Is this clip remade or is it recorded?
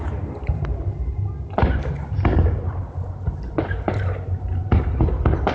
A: recorded